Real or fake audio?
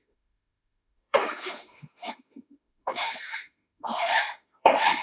fake